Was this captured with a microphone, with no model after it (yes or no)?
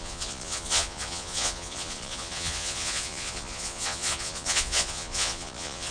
no